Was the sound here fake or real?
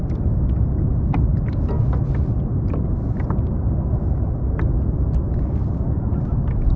real